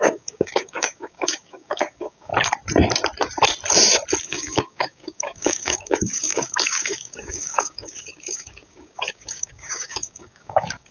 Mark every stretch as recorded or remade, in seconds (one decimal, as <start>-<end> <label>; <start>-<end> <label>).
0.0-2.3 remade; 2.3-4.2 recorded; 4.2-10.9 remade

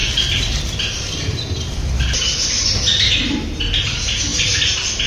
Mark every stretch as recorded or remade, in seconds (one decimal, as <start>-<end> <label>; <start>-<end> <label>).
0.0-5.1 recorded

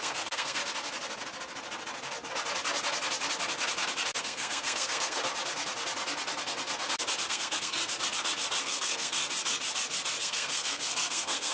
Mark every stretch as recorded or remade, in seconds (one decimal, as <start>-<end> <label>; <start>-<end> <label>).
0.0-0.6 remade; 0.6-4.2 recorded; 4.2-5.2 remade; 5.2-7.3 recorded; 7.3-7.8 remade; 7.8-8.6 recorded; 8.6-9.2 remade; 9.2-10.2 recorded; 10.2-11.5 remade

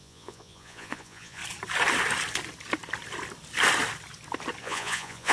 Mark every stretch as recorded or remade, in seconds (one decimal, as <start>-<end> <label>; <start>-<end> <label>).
0.0-1.4 remade; 1.4-4.6 recorded; 4.6-5.3 remade

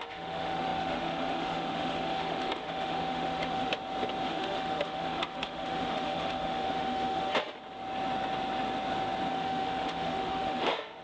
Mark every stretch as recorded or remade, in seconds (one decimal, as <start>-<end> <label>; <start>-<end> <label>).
0.0-3.7 remade; 3.7-4.3 recorded; 4.3-7.4 remade; 7.4-9.3 recorded; 9.3-11.0 remade

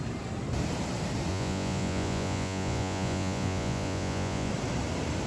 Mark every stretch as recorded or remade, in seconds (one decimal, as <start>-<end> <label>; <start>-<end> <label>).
0.0-1.3 recorded; 1.3-4.5 remade; 4.5-5.3 recorded